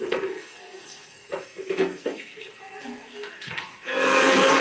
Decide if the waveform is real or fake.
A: fake